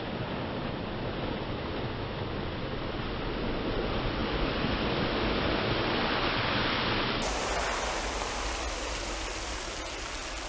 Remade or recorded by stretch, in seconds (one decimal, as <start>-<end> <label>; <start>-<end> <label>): 0.0-10.5 recorded